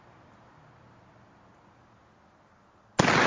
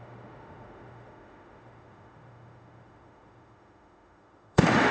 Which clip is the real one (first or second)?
first